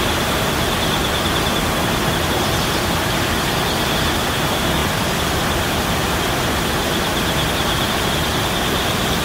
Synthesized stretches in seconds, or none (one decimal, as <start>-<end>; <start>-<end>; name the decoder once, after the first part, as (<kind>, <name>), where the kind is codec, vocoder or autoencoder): none